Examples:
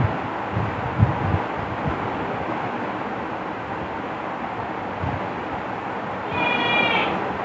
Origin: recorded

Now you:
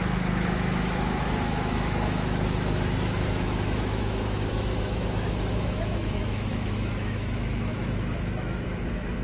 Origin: remade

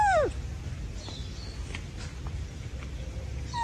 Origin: recorded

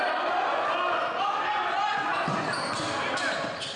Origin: recorded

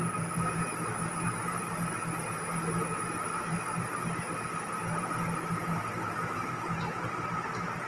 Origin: recorded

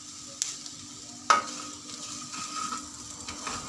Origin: recorded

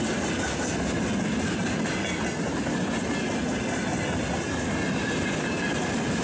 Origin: recorded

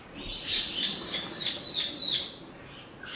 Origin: recorded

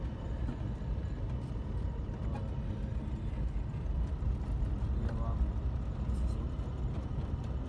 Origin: recorded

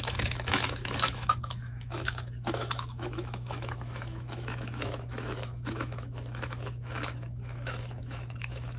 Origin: remade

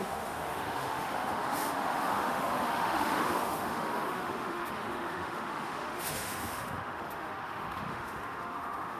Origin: remade